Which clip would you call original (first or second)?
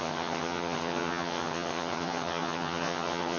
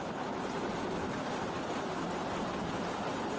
second